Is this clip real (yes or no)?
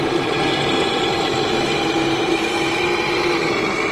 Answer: yes